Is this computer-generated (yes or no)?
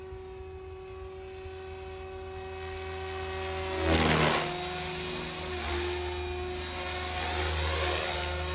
no